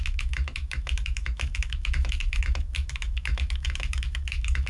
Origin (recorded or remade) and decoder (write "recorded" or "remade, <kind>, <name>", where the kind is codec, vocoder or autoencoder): remade, autoencoder, DAC-VAE